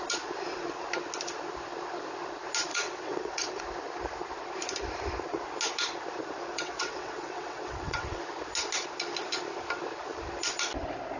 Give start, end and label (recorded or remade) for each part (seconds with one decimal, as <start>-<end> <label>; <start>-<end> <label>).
0.0-2.7 recorded; 2.7-3.6 remade; 3.6-6.5 recorded; 6.5-8.2 remade; 8.2-11.2 recorded